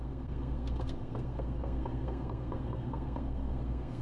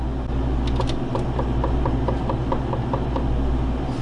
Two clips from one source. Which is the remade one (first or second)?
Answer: first